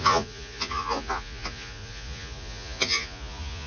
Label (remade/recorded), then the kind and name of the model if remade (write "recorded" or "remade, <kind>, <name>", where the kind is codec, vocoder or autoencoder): remade, vocoder, Vocos